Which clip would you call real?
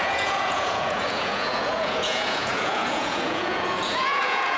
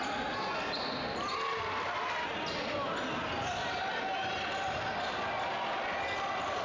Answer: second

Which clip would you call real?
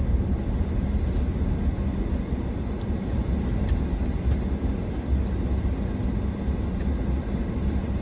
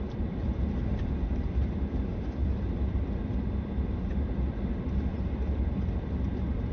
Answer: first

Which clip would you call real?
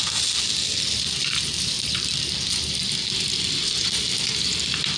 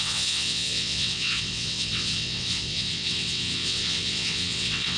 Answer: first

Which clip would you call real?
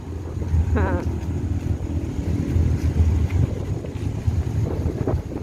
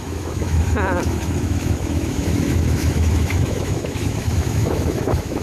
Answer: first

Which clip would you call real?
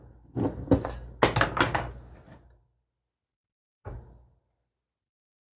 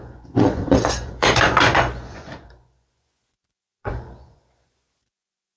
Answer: first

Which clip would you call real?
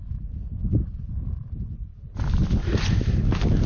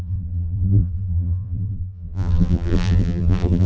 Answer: first